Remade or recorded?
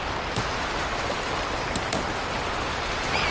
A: recorded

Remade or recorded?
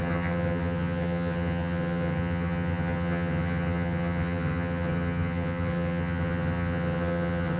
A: remade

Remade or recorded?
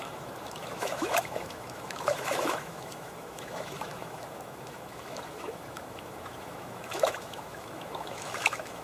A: remade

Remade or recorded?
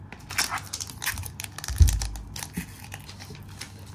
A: recorded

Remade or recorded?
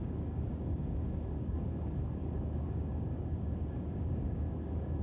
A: remade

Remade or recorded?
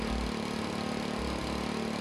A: recorded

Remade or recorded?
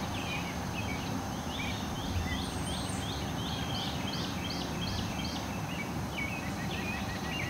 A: recorded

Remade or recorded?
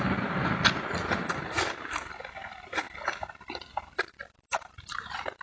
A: remade